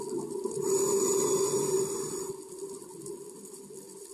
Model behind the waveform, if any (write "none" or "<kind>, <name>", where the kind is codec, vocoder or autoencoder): none